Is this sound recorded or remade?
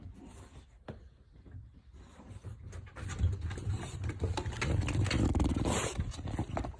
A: recorded